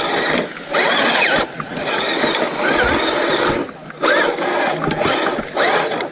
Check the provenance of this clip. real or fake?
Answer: real